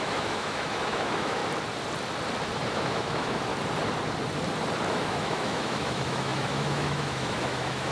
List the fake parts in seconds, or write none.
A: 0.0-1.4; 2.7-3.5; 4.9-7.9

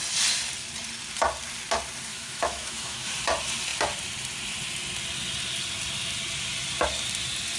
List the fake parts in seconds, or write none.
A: 2.1-3.1